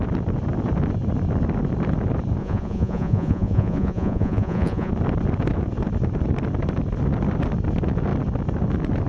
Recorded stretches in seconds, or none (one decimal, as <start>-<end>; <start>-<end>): 0.0-2.4; 4.9-9.1